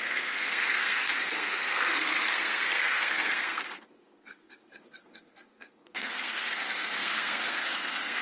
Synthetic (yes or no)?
yes